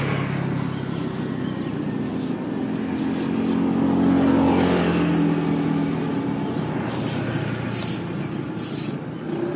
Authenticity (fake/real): real